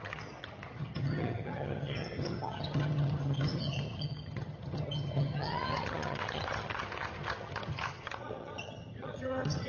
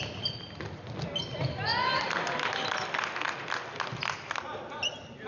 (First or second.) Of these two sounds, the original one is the second